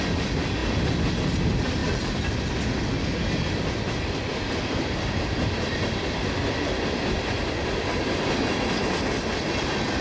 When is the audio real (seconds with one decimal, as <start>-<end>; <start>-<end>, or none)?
0.0-4.3; 8.3-10.0